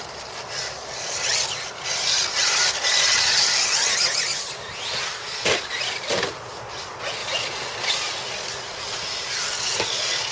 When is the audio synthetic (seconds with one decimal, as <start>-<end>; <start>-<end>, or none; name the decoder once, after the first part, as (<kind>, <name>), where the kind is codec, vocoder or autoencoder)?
none

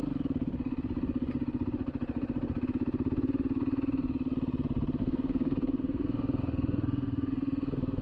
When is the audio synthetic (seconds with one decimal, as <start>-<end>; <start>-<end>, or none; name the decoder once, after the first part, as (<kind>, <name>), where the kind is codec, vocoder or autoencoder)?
5.0-8.0 (codec, SNAC)

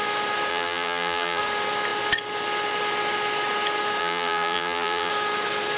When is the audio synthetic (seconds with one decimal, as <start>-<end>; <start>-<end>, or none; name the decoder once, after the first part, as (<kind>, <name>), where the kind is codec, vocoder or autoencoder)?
0.5-1.4 (vocoder, BigVGAN v2); 4.0-5.1

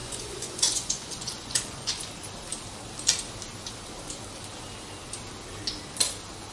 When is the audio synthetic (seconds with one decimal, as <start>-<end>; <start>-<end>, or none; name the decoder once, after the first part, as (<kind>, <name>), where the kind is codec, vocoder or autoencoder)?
0.0-2.1 (vocoder, Vocos)

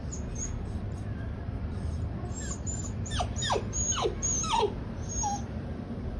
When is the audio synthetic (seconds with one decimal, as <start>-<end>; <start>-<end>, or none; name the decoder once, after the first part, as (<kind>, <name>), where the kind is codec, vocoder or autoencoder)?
0.0-6.2 (vocoder, BigVGAN v2)

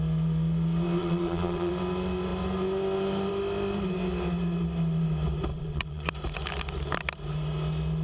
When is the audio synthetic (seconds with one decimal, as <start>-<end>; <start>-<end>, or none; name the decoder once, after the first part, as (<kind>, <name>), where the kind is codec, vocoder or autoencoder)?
1.0-1.7 (vocoder, WaveNeXt); 5.5-6.1

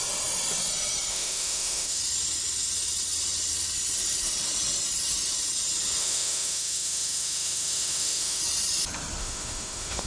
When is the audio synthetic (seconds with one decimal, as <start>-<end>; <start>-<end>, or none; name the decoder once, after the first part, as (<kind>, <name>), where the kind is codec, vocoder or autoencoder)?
1.1-2.0 (autoencoder, DAC-VAE); 6.0-8.4; 9.2-10.1

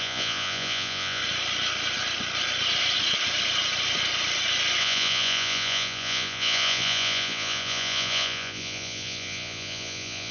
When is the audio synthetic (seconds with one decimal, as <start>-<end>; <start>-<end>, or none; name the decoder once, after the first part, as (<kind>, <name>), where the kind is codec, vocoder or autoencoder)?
0.0-1.2 (vocoder, Vocos); 4.8-10.3